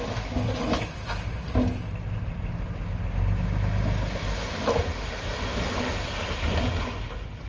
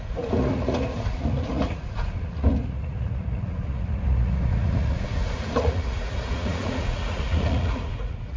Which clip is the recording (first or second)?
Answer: first